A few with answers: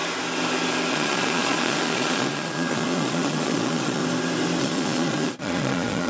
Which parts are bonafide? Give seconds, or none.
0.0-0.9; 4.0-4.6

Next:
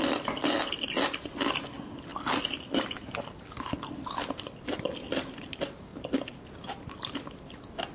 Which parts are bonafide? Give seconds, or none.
0.0-7.9

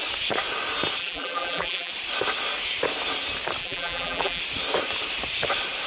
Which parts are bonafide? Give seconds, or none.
0.0-1.0; 1.9-3.6; 4.4-5.9

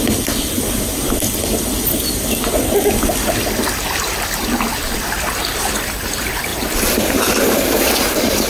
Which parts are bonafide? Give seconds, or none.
0.0-6.5; 7.2-8.5

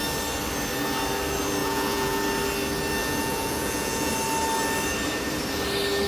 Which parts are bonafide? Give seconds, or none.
0.0-1.6; 2.2-3.0; 4.1-6.1

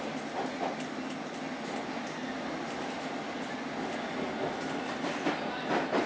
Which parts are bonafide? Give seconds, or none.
0.0-6.1